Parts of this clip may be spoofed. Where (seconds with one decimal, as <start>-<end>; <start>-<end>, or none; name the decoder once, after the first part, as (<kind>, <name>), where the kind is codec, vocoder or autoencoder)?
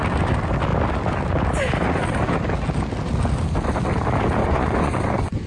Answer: 4.4-5.5 (vocoder, Vocos)